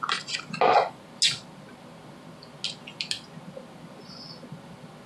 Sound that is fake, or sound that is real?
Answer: real